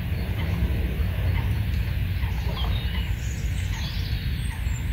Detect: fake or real real